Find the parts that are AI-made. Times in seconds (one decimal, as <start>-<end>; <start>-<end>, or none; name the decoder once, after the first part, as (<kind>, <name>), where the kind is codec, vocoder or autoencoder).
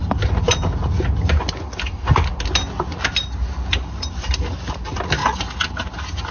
none